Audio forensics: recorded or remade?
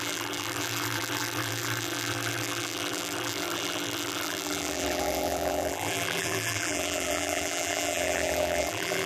remade